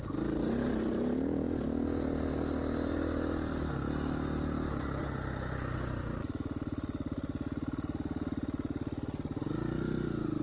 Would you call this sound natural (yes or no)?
yes